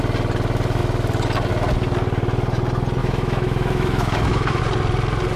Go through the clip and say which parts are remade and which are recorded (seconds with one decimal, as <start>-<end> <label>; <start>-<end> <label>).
0.0-3.0 recorded; 3.0-4.6 remade; 4.6-5.4 recorded